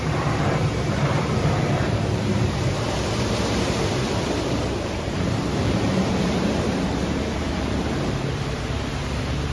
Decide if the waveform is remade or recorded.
remade